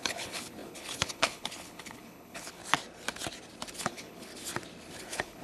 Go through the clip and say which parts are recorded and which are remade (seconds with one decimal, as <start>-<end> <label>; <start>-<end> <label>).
0.0-2.6 remade; 2.6-3.8 recorded; 3.8-4.3 remade; 4.3-5.0 recorded; 5.0-5.4 remade